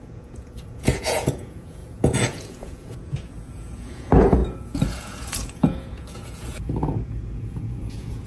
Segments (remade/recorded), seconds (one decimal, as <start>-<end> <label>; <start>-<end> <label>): 0.0-8.3 remade